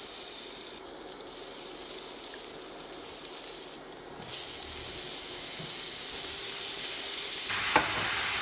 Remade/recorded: recorded